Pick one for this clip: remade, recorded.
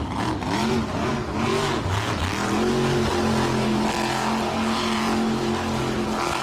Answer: recorded